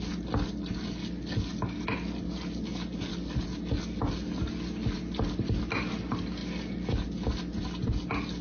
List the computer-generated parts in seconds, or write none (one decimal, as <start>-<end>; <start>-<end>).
none